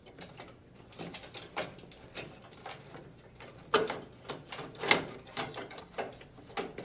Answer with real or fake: real